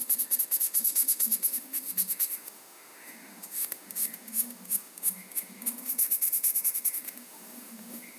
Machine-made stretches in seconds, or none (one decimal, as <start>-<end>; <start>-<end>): 0.0-8.2